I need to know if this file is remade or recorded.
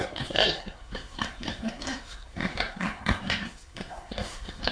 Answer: remade